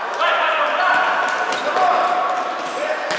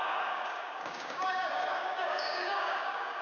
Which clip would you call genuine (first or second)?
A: first